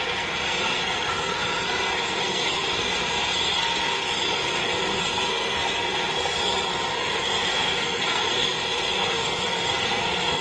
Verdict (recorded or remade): remade